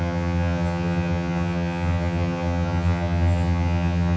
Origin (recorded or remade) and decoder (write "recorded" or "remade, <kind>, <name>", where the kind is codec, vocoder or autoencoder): remade, vocoder, HiFi-GAN